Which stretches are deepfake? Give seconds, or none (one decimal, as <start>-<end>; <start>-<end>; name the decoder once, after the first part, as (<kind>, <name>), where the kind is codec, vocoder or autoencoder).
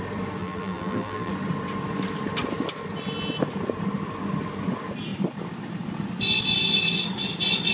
0.4-1.3 (vocoder, BigVGAN v2)